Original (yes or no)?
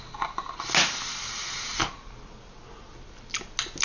yes